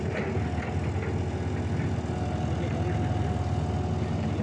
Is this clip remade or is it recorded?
recorded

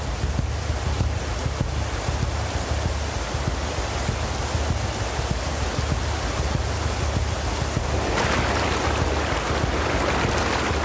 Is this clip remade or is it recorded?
recorded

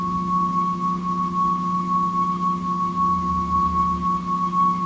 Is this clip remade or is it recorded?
recorded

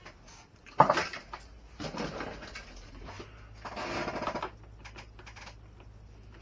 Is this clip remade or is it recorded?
recorded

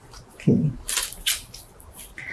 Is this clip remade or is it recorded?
recorded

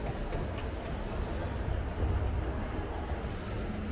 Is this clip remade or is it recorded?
recorded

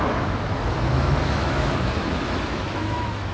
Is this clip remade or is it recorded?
remade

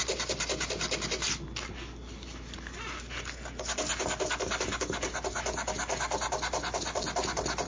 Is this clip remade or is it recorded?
recorded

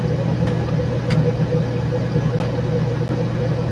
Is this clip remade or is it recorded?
recorded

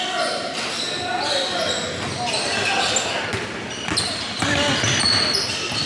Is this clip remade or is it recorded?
recorded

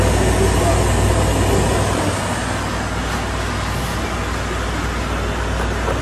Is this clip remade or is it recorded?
recorded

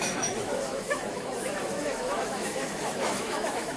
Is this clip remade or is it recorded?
remade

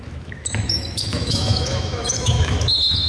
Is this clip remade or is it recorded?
remade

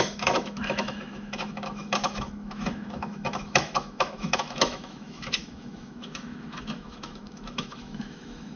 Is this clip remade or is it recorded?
remade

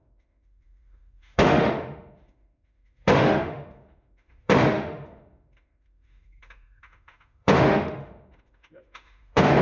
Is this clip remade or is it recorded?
remade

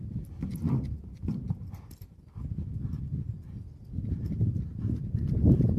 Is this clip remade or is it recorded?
recorded